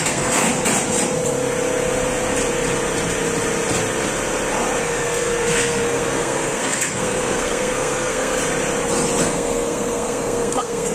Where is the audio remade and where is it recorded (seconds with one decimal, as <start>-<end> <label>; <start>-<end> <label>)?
0.0-0.5 remade; 0.5-4.8 recorded; 4.8-8.4 remade; 8.4-9.2 recorded; 9.2-10.9 remade